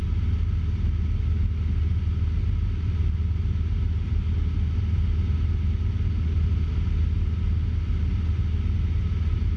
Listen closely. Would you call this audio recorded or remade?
recorded